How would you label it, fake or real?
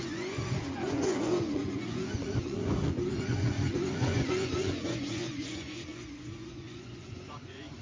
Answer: fake